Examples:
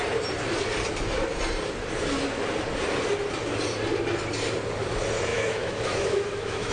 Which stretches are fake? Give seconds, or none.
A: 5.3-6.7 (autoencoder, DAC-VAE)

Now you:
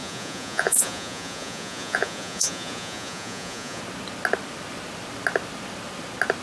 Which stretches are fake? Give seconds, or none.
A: 0.0-3.8 (vocoder, Vocos)

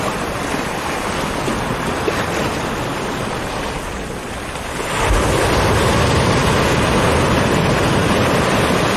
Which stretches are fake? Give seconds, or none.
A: none